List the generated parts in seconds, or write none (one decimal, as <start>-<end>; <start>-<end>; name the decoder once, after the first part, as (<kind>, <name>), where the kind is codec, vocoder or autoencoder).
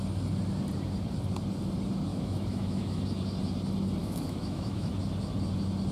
2.1-3.0 (autoencoder, DAC-VAE); 4.0-4.9